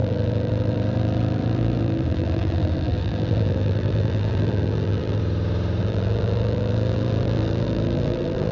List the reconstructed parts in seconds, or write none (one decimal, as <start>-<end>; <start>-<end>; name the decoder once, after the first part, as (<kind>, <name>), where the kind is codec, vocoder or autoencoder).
0.0-5.2 (vocoder, BigVGAN v2); 5.8-8.5